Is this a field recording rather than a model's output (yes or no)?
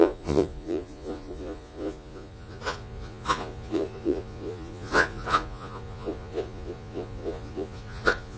no